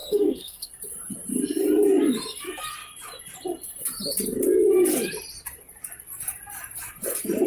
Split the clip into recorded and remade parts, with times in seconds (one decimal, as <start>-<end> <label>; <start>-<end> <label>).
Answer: 0.0-0.7 remade; 0.7-7.5 recorded